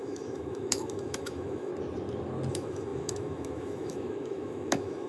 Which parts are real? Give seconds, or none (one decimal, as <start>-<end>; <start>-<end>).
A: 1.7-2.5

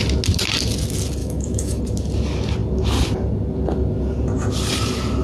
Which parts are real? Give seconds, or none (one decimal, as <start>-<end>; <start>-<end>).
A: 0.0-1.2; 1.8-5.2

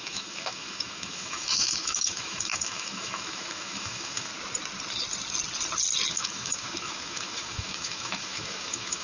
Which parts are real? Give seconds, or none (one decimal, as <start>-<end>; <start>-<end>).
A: 4.3-6.1

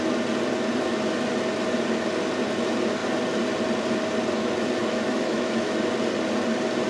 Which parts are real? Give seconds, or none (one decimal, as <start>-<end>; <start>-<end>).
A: 0.0-4.8; 5.8-6.9

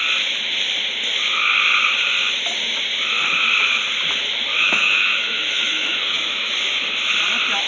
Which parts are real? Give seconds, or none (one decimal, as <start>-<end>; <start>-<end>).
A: 0.0-4.5; 6.5-7.7